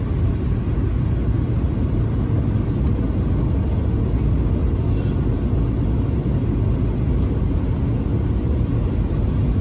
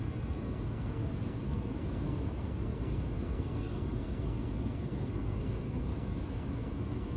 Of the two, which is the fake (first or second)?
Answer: second